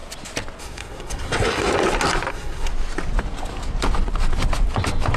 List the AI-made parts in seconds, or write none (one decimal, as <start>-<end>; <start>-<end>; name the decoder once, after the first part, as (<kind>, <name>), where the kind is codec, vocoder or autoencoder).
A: 0.6-1.7 (codec, SNAC); 2.3-2.7